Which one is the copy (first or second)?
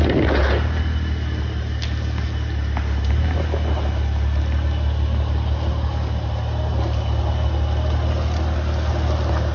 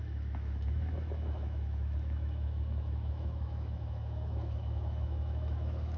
second